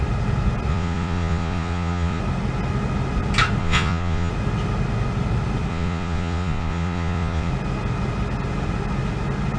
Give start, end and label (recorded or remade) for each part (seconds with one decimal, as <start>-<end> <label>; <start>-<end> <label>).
0.0-0.7 recorded; 0.7-2.2 remade; 2.2-3.6 recorded; 3.6-4.3 remade; 4.3-5.7 recorded; 5.7-7.5 remade; 7.5-9.6 recorded